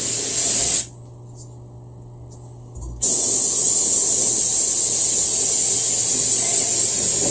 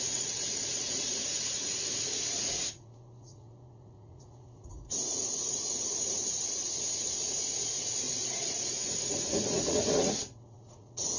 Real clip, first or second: first